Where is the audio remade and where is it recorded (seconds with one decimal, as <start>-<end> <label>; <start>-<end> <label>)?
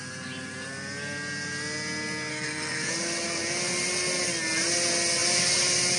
0.0-2.3 recorded; 2.3-2.9 remade; 2.9-6.0 recorded